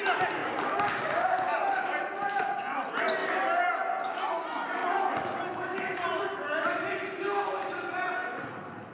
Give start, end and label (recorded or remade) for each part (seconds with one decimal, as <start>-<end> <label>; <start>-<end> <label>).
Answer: 0.0-3.2 recorded; 3.2-3.7 remade; 3.7-4.8 recorded; 4.8-6.7 remade; 6.7-8.9 recorded